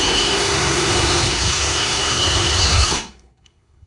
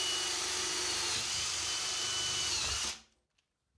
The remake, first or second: first